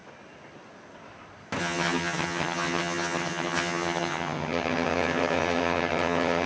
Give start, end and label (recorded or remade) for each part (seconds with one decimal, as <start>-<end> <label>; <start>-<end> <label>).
0.0-1.6 recorded; 1.6-6.5 remade